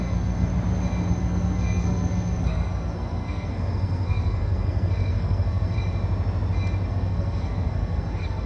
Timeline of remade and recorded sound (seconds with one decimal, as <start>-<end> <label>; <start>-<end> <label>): 0.0-0.5 remade; 0.5-1.1 recorded; 1.1-5.8 remade; 5.8-6.9 recorded; 6.9-8.5 remade